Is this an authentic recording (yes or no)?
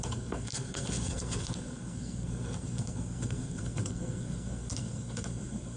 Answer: no